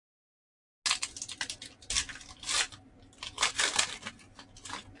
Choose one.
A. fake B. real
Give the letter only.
B